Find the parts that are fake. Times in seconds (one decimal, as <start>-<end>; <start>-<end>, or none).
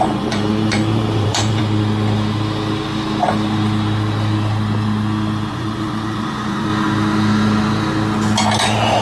0.0-1.6; 5.5-6.7; 8.6-9.0